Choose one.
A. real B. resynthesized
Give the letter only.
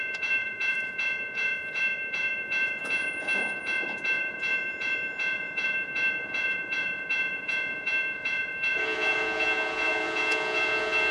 B